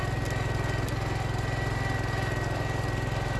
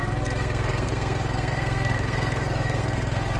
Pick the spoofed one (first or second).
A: second